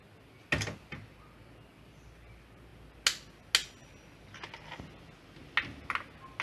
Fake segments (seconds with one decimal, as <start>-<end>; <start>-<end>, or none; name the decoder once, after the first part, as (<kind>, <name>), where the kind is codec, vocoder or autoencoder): none